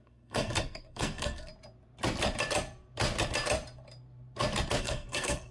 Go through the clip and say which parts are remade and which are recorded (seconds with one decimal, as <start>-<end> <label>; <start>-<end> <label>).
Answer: 0.0-1.5 remade; 1.5-4.8 recorded; 4.8-5.5 remade